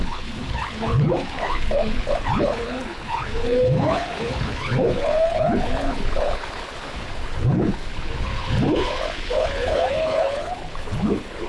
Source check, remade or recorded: remade